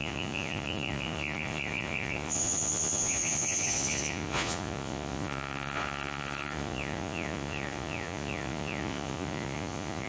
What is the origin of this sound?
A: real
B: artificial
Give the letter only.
B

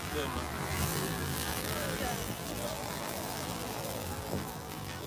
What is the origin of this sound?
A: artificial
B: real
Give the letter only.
A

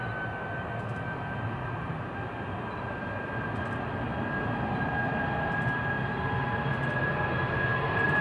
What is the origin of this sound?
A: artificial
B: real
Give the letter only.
B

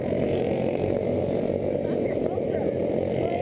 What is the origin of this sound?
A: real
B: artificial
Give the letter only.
B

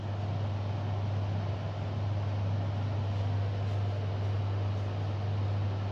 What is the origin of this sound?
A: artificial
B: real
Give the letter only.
B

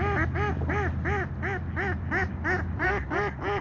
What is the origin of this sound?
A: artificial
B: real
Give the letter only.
B